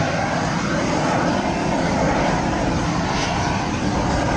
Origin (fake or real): real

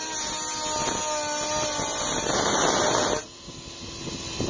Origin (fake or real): real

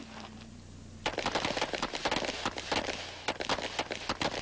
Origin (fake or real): real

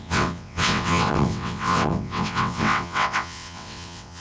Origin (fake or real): fake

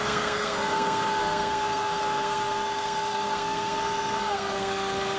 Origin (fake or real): fake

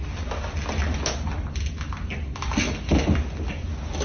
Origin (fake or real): real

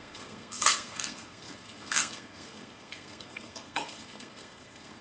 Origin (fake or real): fake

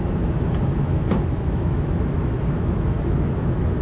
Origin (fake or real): fake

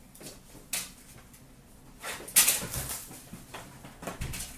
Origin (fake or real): real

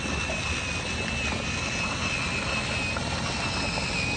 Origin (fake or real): real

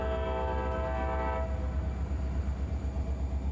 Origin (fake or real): real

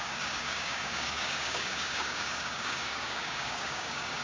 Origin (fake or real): fake